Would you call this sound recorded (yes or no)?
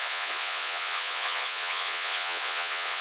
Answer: no